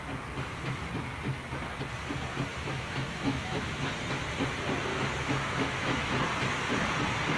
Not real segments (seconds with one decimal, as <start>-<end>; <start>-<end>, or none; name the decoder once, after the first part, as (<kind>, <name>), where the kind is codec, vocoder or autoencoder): 2.5-3.9 (autoencoder, DAC-VAE); 4.9-6.1